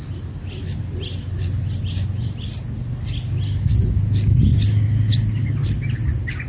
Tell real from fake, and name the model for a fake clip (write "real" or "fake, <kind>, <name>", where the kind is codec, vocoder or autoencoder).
real